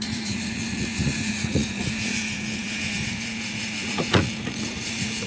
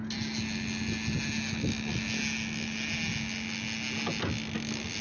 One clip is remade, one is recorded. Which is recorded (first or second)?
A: second